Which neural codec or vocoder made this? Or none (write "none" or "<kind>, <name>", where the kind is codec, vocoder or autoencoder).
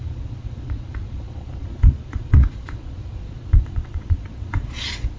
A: vocoder, Vocos